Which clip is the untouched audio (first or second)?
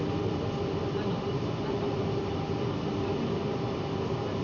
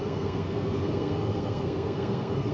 first